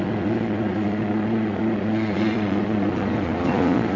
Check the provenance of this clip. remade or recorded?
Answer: remade